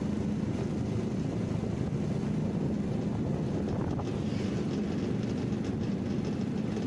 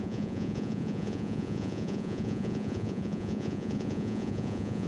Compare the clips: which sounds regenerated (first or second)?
second